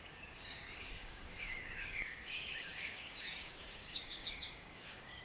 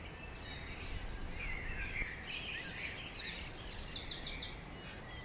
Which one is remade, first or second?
first